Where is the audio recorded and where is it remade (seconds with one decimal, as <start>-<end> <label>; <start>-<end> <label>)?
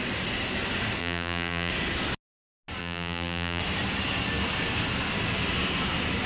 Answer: 0.0-1.0 recorded; 1.0-1.7 remade; 1.7-2.8 recorded; 2.8-3.6 remade; 3.6-6.3 recorded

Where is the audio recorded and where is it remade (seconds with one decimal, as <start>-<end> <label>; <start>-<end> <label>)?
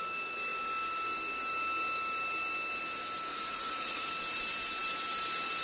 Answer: 0.0-3.3 recorded; 3.3-4.1 remade; 4.1-5.6 recorded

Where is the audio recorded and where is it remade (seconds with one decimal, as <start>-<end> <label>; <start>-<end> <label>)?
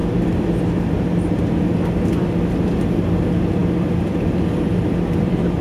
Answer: 0.0-3.6 recorded; 3.6-5.6 remade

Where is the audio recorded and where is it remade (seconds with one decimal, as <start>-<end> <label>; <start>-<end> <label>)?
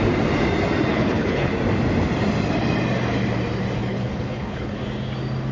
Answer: 0.0-0.9 recorded; 0.9-1.5 remade; 1.5-3.8 recorded; 3.8-4.8 remade; 4.8-5.5 recorded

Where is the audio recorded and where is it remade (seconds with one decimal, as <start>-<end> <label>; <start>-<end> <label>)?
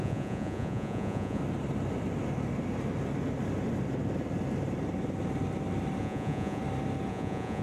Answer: 0.0-1.4 remade; 1.4-6.0 recorded; 6.0-6.6 remade; 6.6-7.1 recorded; 7.1-7.6 remade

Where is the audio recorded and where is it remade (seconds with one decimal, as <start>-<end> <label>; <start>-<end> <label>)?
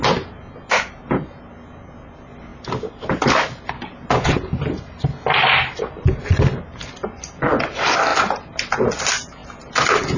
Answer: 0.0-10.2 recorded